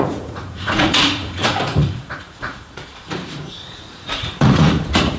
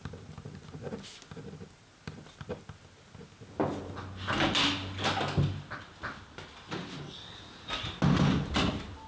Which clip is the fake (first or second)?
first